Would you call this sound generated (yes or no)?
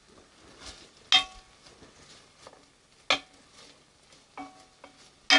no